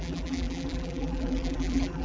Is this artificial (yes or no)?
yes